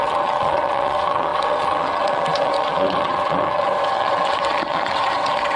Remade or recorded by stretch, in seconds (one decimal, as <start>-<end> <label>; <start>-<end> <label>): 0.0-5.6 remade